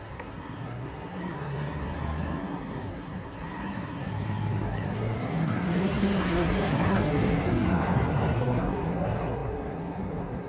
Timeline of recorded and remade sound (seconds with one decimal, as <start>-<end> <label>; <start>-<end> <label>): 0.0-10.5 remade